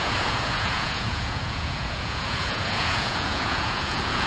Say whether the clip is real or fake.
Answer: fake